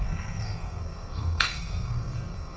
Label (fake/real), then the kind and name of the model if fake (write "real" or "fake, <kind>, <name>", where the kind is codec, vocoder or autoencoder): fake, codec, SNAC